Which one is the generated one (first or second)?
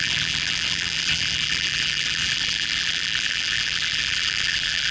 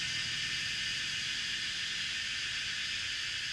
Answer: first